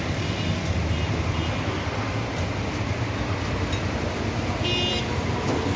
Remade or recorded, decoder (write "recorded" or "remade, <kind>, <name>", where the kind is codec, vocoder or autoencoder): recorded